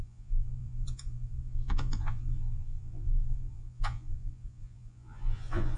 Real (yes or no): no